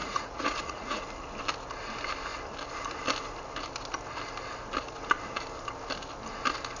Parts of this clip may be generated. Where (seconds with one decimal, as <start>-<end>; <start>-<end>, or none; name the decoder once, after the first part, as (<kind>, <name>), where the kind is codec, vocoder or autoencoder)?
0.0-1.0 (vocoder, Vocos)